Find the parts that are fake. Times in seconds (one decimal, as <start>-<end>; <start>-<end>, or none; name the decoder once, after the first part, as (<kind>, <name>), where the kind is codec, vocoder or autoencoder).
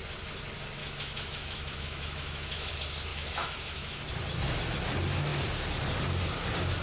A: 0.8-2.7 (autoencoder, DAC-VAE); 3.1-4.0